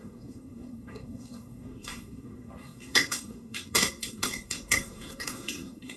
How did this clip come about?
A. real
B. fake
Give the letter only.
B